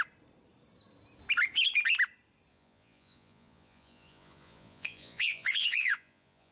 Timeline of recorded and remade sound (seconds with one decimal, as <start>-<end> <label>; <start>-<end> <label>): 0.0-2.5 recorded; 2.5-6.5 remade